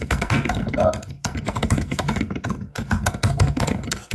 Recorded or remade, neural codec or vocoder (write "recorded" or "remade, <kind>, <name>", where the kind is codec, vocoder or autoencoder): remade, codec, SNAC